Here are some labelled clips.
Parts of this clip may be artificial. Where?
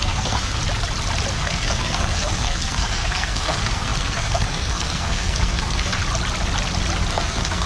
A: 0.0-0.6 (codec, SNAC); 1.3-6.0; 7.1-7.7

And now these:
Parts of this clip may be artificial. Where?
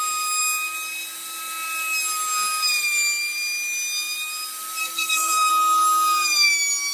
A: 4.8-5.5 (codec, SNAC)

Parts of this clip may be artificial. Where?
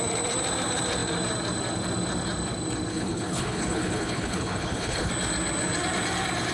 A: 2.9-5.1 (codec, HILCodec)